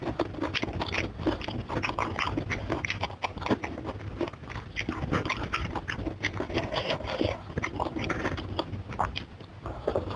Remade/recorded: recorded